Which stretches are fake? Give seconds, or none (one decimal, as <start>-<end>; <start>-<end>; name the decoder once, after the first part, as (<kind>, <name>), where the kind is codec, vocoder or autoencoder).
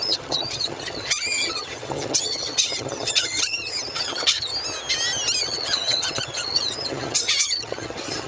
0.0-4.5 (vocoder, HiFi-GAN); 5.4-8.3